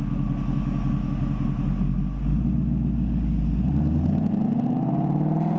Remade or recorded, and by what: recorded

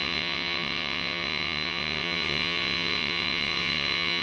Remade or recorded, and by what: remade, vocoder, WaveNeXt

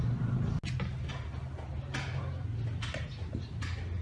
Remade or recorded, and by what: recorded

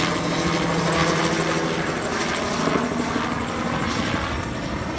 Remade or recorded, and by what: recorded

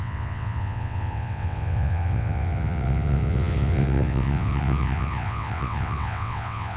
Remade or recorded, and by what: remade, vocoder, WaveNeXt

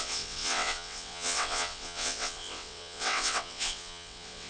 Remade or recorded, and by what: remade, vocoder, WaveNeXt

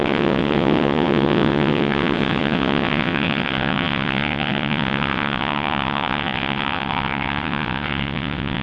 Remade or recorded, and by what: remade, vocoder, WaveNeXt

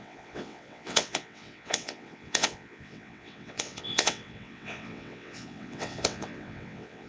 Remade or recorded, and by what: remade, vocoder, WaveNeXt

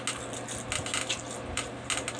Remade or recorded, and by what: recorded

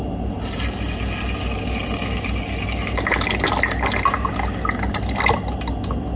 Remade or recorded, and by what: recorded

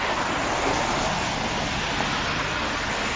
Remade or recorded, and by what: recorded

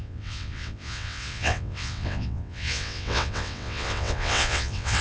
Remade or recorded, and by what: remade, vocoder, WaveNeXt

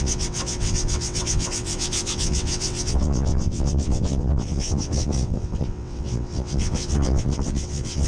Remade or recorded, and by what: remade, vocoder, WaveNeXt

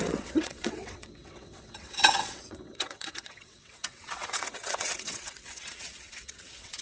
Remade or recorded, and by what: remade, vocoder, WaveNeXt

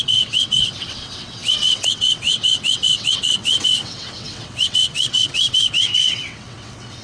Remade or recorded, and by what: remade, vocoder, WaveNeXt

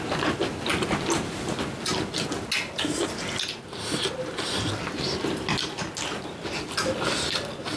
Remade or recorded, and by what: recorded